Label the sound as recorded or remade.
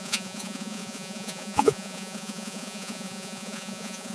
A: remade